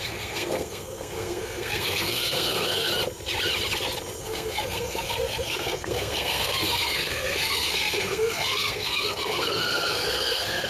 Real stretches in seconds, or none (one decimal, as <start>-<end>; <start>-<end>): 2.9-4.2